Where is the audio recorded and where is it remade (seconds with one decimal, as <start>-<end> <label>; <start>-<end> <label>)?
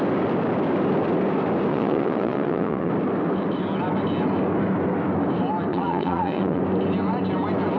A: 0.0-1.7 recorded; 1.7-2.9 remade; 2.9-5.7 recorded; 5.7-6.6 remade; 6.6-7.8 recorded